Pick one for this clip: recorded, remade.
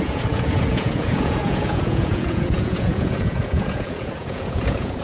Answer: remade